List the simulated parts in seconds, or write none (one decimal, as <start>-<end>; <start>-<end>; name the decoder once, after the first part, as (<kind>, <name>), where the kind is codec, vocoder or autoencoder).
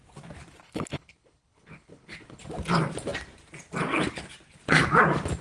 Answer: 0.6-2.4 (codec, HILCodec)